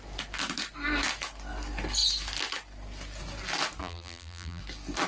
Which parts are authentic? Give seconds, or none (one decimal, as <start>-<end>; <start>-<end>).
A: 0.0-3.8; 4.6-5.1

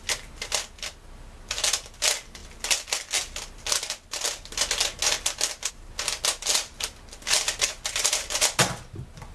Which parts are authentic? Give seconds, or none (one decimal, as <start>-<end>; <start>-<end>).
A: 0.0-9.3

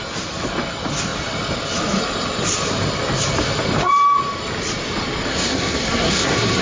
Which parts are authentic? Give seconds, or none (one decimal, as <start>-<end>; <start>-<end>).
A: 0.0-5.3

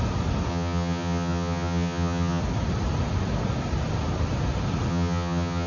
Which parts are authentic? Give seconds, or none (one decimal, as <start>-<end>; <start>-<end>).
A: 0.0-0.5; 2.4-4.9

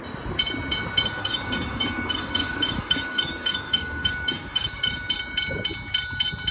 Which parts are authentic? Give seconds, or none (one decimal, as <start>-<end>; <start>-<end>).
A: 0.0-1.2; 5.1-6.5

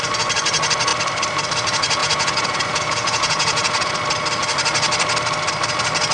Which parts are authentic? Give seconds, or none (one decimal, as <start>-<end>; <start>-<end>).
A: 0.0-2.0; 3.9-6.1